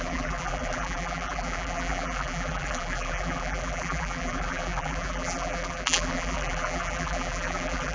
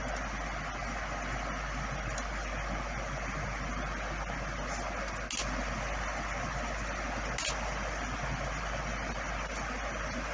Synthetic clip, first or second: first